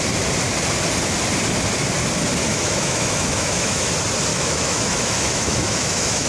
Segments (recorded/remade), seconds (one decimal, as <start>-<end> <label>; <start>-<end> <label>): 0.0-2.5 recorded; 2.5-3.9 remade; 3.9-4.3 recorded; 4.3-6.3 remade